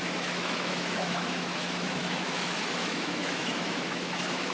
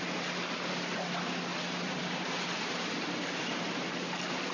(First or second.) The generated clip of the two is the first